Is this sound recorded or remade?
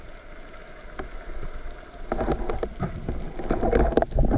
recorded